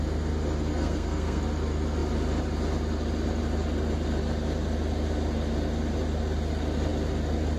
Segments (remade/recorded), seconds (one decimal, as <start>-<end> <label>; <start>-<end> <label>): 0.0-0.7 recorded; 0.7-1.4 remade; 1.4-7.6 recorded